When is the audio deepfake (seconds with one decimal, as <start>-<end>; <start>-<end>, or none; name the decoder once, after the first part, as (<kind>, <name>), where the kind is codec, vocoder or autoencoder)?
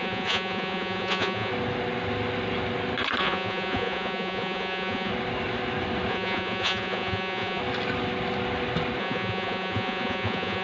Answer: 0.0-1.5 (vocoder, Vocos); 3.2-5.1; 6.1-7.6; 9.0-10.6